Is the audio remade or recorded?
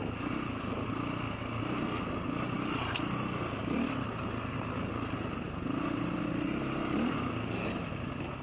recorded